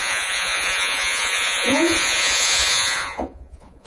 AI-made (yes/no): yes